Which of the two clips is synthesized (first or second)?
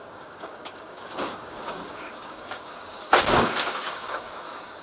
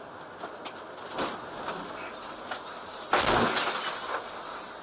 first